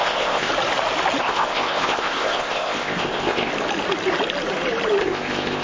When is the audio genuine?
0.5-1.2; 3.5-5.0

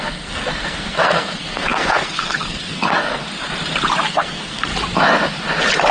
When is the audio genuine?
3.2-4.1; 4.7-5.9